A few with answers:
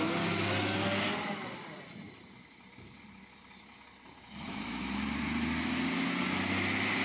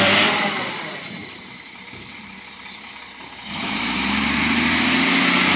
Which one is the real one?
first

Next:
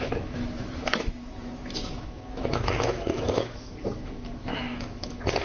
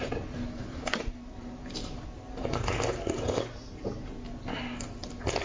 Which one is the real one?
second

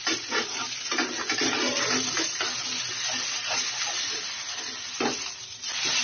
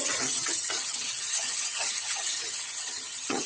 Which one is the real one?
first